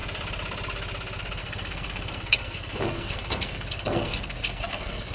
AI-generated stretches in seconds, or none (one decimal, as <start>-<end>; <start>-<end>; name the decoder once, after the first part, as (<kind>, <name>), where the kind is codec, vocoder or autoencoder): 1.4-5.1 (codec, SNAC)